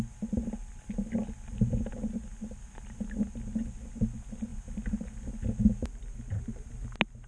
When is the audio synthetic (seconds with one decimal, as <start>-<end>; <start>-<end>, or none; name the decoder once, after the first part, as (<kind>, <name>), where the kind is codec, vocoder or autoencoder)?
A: 1.2-1.9 (vocoder, BigVGAN v2); 4.5-5.3; 5.8-6.4